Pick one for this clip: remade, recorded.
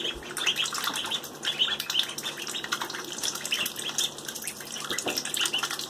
recorded